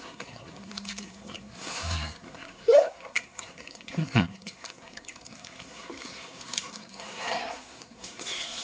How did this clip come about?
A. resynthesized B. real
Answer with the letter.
A